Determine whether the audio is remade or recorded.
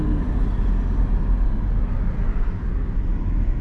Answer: recorded